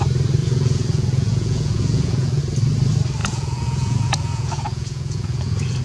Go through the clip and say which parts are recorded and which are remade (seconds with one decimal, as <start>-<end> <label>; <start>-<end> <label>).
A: 0.0-0.4 recorded; 0.4-2.4 remade; 2.4-3.2 recorded; 3.2-5.8 remade